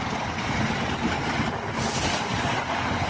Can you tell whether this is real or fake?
real